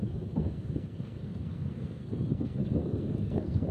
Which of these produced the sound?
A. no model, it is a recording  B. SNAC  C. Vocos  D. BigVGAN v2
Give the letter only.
B